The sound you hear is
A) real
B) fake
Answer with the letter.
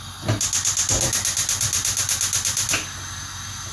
A